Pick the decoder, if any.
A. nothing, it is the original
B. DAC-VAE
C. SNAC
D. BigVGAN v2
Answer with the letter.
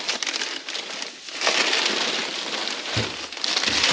A